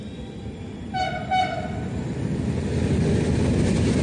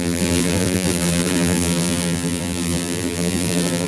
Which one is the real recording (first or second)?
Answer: first